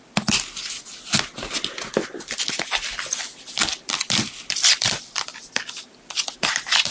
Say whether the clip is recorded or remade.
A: recorded